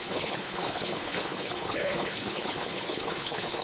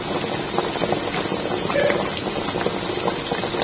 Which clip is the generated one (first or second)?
first